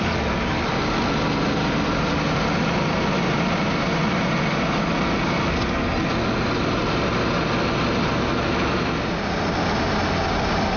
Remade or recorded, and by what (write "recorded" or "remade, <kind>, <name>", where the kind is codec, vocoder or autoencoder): recorded